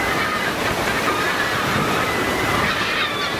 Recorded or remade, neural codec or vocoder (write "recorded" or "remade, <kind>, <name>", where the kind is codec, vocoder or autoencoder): recorded